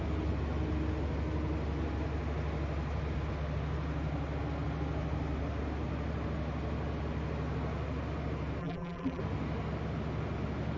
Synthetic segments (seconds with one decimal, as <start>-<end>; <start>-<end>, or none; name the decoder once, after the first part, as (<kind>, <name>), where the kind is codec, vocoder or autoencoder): 8.6-9.2 (vocoder, BigVGAN v2)